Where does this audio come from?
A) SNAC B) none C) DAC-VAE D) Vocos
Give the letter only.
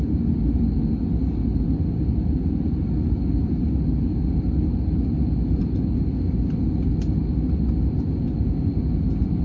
B